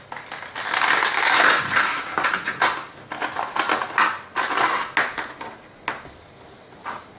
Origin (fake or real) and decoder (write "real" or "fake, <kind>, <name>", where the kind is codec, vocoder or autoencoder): real